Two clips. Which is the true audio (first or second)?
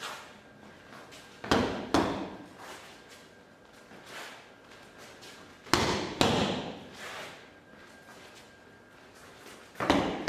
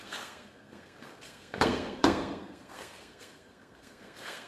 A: first